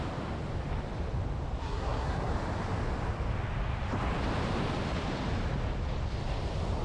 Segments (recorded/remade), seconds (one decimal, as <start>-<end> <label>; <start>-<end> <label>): 0.0-1.6 recorded; 1.6-2.3 remade; 2.3-6.8 recorded